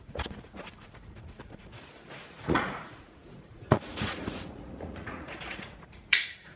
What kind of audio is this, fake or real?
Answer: fake